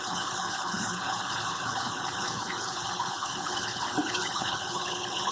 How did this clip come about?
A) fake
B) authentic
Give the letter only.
A